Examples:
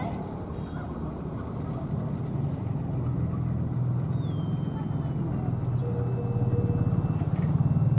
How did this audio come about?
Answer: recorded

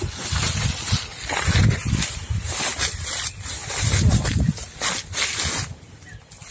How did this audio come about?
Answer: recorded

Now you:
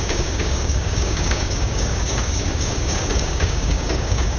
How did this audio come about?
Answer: remade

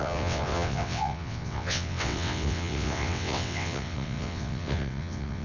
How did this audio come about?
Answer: remade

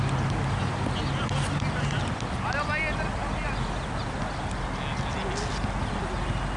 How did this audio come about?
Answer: recorded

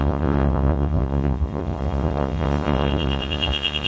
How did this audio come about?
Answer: remade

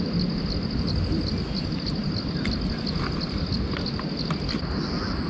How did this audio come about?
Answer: recorded